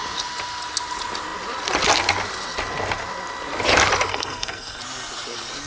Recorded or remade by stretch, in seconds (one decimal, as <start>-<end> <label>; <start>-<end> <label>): 0.0-4.1 recorded; 4.1-4.8 remade; 4.8-5.7 recorded